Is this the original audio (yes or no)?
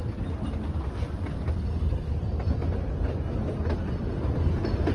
yes